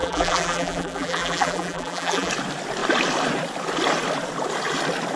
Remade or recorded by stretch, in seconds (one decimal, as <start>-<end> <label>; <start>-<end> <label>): 0.0-2.3 remade; 2.3-5.2 recorded